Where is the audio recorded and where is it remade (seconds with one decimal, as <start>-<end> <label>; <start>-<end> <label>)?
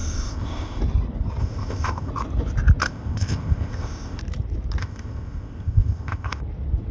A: 0.0-0.8 remade; 0.8-1.4 recorded; 1.4-2.1 remade; 2.1-2.8 recorded; 2.8-4.2 remade; 4.2-4.8 recorded; 4.8-6.4 remade; 6.4-6.9 recorded